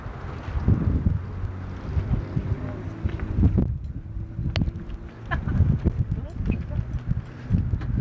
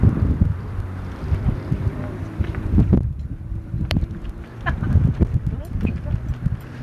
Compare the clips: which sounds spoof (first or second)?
second